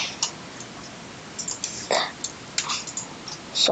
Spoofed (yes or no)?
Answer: no